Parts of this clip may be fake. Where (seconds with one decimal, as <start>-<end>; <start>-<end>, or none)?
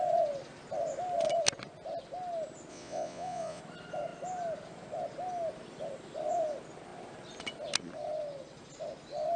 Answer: 2.7-3.6